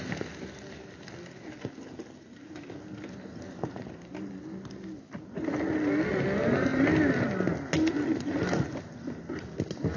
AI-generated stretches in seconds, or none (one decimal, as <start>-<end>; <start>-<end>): none